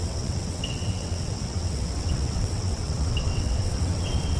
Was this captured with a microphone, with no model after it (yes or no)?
no